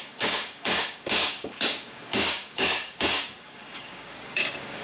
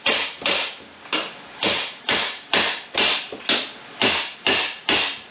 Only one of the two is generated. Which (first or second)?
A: first